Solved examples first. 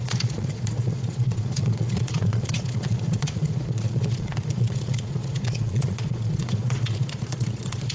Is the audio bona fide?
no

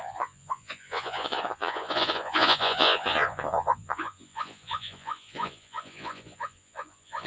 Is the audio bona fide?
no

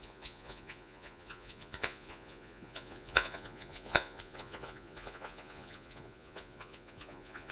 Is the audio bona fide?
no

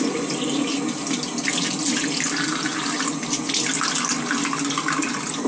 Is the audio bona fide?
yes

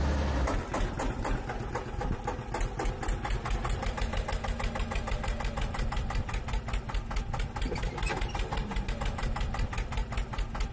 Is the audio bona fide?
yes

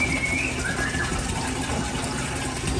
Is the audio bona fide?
yes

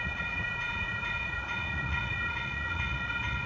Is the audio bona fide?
no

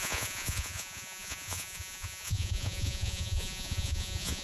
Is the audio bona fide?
no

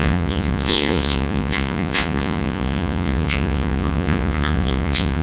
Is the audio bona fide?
no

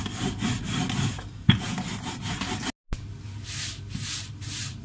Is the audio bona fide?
yes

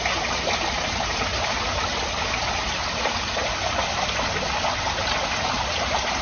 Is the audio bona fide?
yes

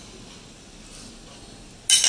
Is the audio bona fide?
yes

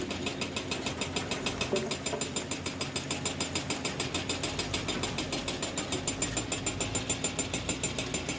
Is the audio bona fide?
yes